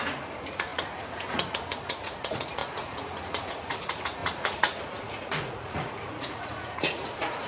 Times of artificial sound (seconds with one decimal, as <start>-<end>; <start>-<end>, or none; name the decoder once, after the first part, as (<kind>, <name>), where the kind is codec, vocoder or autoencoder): 0.0-7.5 (vocoder, Vocos)